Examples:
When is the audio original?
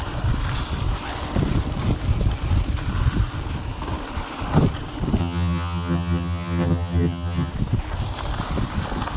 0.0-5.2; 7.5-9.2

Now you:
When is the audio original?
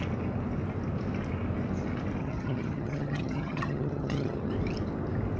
0.0-2.2; 4.5-5.4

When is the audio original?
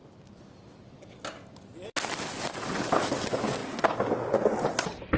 0.0-5.2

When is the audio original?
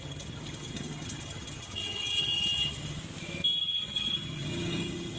3.0-3.6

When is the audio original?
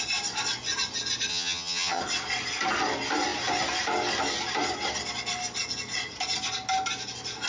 0.0-1.3; 2.0-7.5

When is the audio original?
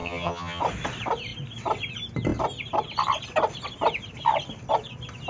0.6-5.3